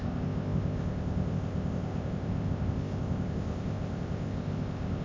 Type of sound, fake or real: fake